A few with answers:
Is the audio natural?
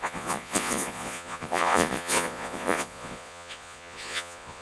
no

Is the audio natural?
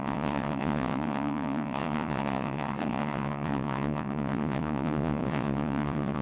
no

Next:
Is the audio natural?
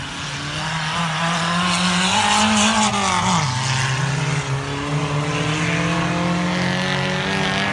yes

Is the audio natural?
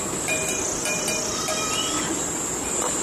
no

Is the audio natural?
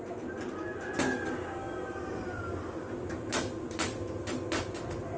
yes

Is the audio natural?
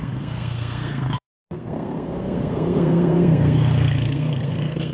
no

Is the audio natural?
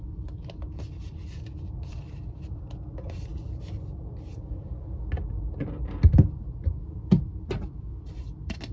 yes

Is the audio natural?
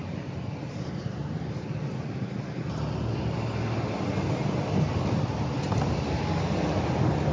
yes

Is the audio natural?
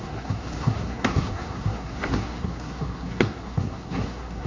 no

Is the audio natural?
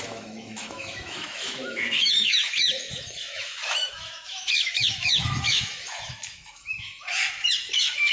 no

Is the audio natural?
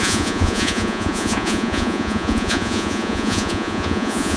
no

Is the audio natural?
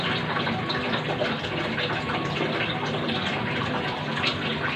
yes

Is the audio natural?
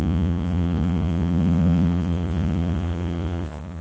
no